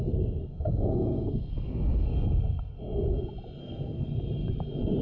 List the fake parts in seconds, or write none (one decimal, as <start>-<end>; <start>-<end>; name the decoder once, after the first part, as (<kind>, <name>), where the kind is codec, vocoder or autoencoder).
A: 0.4-2.8 (codec, SNAC); 3.6-4.1